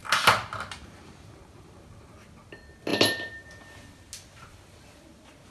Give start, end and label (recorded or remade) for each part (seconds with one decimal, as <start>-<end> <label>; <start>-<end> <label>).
0.0-5.5 recorded